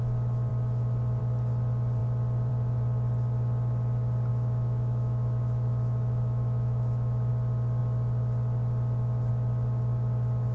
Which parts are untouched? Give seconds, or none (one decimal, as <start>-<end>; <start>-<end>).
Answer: 0.0-4.3; 7.3-10.5